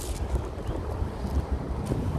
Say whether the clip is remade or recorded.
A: recorded